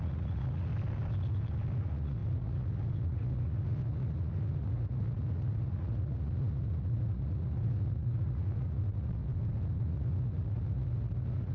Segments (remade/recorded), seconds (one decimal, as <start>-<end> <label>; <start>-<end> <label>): 0.0-0.7 remade; 0.7-1.8 recorded; 1.8-9.2 remade; 9.2-9.8 recorded; 9.8-11.5 remade